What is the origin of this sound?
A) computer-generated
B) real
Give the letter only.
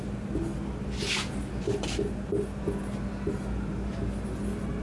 B